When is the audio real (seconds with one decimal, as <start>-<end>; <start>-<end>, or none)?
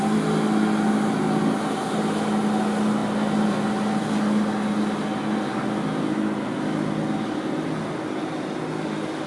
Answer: 0.0-9.3